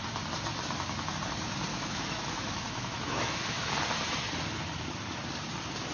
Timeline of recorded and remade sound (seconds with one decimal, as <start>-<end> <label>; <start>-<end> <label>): 0.0-1.7 recorded; 1.7-3.7 remade; 3.7-5.9 recorded

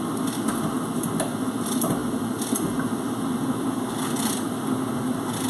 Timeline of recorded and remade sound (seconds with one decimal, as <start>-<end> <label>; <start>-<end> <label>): 0.0-5.5 recorded

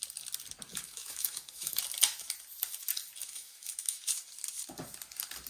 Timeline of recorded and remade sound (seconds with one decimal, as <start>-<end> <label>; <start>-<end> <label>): 0.0-0.7 recorded; 0.7-1.8 remade; 1.8-3.2 recorded; 3.2-4.0 remade; 4.0-5.5 recorded

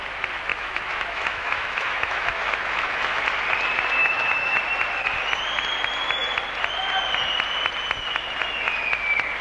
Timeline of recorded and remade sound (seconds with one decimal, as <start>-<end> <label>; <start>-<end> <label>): 0.0-0.5 recorded; 0.5-3.2 remade; 3.2-4.0 recorded; 4.0-4.6 remade; 4.6-9.4 recorded

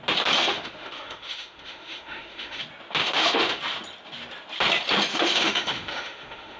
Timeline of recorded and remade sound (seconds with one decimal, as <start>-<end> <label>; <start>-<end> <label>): 0.0-0.4 recorded; 0.4-2.6 remade; 2.6-3.0 recorded; 3.0-3.6 remade; 3.6-5.1 recorded; 5.1-6.6 remade

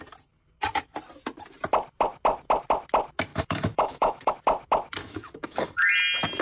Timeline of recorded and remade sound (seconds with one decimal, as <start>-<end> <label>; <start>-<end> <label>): 0.0-3.3 recorded; 3.3-4.3 remade; 4.3-5.0 recorded; 5.0-5.9 remade; 5.9-6.4 recorded

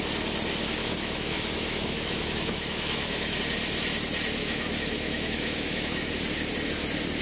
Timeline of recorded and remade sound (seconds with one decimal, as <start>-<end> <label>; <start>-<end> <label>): 0.0-0.8 recorded; 0.8-3.4 remade; 3.4-4.4 recorded; 4.4-6.1 remade; 6.1-7.2 recorded

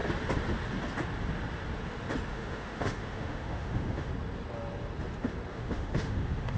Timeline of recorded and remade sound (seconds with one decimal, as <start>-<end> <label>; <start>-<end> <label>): 0.0-2.3 recorded; 2.3-4.1 remade; 4.1-5.5 recorded; 5.5-6.6 remade